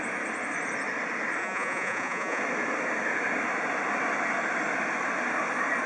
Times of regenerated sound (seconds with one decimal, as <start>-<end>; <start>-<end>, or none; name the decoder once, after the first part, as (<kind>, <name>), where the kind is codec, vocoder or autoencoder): 1.4-2.4 (vocoder, Vocos)